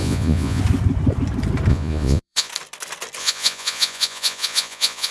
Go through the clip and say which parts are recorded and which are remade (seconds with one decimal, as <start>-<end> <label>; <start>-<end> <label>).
0.0-0.6 remade; 0.6-1.7 recorded; 1.7-2.5 remade; 2.5-3.2 recorded; 3.2-5.1 remade